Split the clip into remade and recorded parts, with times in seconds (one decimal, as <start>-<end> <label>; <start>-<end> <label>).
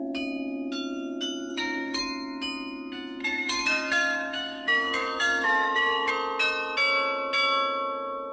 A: 0.0-1.5 recorded; 1.5-2.0 remade; 2.0-3.2 recorded; 3.2-6.1 remade; 6.1-8.3 recorded